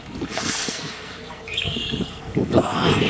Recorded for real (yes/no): no